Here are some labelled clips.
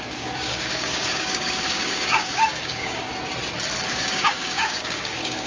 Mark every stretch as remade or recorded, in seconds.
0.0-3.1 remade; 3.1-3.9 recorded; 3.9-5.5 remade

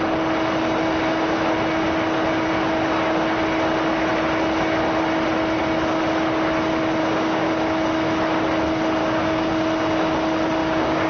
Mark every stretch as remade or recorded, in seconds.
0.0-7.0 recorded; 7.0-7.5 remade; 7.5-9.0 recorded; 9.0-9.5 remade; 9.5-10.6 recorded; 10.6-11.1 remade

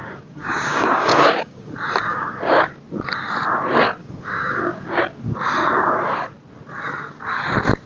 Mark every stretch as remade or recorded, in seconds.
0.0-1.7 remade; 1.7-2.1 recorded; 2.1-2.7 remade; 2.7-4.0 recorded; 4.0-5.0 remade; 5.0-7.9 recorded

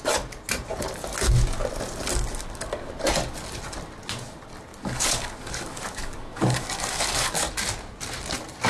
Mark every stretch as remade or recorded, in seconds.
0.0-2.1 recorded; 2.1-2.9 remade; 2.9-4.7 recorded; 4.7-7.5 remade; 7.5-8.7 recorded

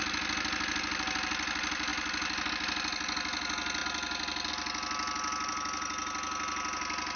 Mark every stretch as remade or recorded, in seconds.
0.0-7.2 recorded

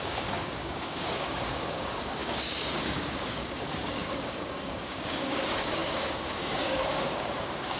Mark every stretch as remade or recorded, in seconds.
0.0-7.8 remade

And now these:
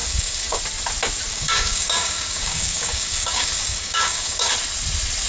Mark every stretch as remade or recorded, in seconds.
0.0-0.6 remade; 0.6-1.3 recorded; 1.3-4.5 remade; 4.5-5.3 recorded